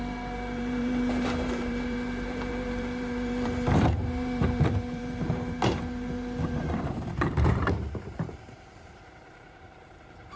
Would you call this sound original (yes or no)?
no